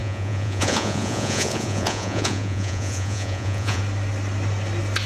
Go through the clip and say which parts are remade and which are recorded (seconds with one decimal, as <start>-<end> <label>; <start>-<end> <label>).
0.0-3.8 remade; 3.8-5.1 recorded